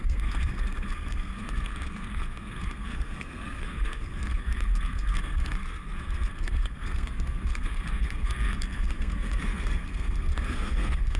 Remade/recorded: remade